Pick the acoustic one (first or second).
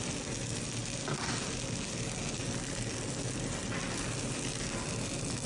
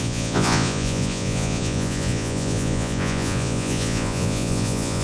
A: first